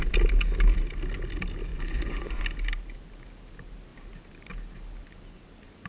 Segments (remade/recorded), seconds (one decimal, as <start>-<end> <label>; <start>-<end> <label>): 0.0-1.7 recorded; 1.7-2.4 remade; 2.4-5.9 recorded